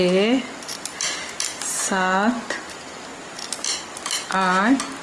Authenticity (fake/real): real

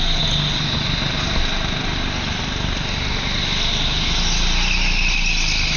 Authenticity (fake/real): real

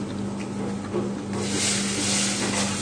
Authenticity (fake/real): real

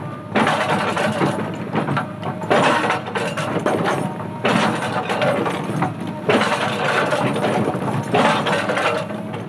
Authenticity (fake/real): real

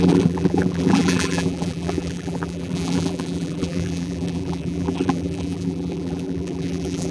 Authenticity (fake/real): fake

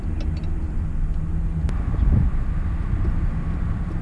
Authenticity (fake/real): real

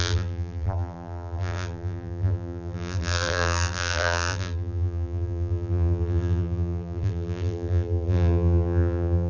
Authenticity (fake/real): fake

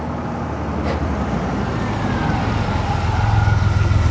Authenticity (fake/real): real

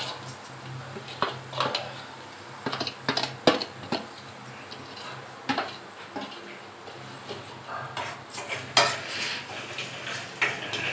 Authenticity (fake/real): real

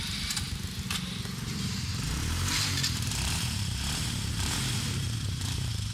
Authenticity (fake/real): fake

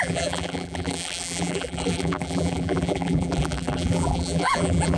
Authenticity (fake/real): fake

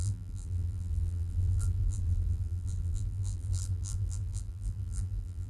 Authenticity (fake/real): fake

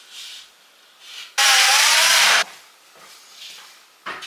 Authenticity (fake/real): real